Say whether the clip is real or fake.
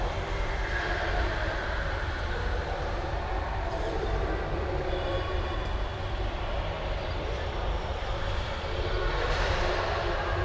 fake